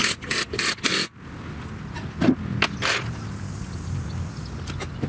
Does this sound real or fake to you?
real